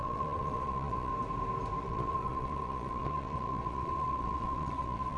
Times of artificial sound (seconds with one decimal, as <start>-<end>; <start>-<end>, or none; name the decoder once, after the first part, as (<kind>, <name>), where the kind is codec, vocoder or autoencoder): 0.0-1.1 (vocoder, Vocos); 1.8-5.2